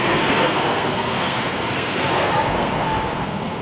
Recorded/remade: remade